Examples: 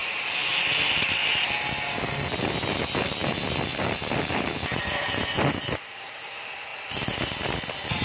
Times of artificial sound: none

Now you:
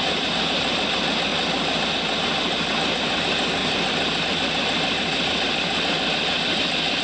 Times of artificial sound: none